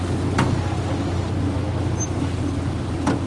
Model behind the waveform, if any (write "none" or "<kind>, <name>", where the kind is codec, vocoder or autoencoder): none